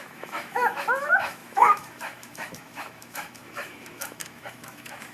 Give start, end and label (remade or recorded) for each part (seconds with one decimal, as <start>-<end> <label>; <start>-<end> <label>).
0.0-5.1 remade